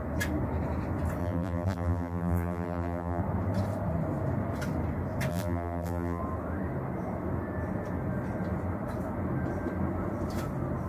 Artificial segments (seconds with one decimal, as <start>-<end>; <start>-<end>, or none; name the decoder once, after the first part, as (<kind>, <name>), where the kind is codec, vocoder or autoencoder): 1.2-3.2 (vocoder, BigVGAN v2); 5.3-6.2